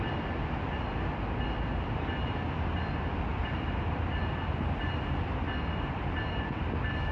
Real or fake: real